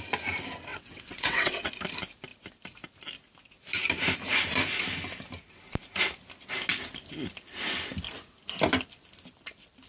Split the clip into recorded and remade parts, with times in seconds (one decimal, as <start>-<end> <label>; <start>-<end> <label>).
0.0-0.7 recorded; 0.7-1.7 remade; 1.7-9.9 recorded